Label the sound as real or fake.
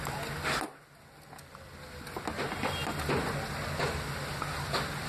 real